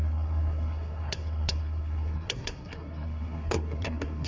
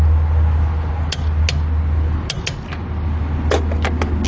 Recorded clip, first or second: second